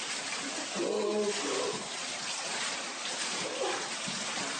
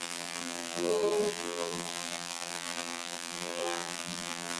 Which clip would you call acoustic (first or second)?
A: first